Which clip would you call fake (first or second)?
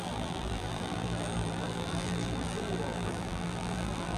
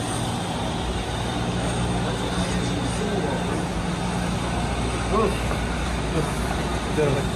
first